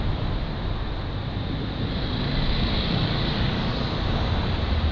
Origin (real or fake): fake